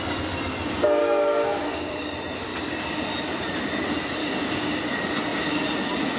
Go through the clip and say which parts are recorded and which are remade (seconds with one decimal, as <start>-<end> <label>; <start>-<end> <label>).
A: 0.0-1.0 recorded; 1.0-2.1 remade; 2.1-4.2 recorded; 4.2-4.8 remade; 4.8-6.2 recorded